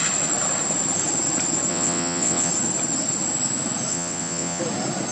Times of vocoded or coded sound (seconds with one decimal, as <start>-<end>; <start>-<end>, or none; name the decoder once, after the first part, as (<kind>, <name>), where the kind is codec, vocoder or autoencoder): 1.7-2.5 (vocoder, WaveNeXt); 3.9-4.6